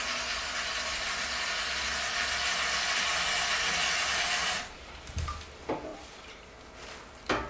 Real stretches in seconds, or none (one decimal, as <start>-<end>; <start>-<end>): 0.0-4.4; 5.4-5.9; 6.5-7.5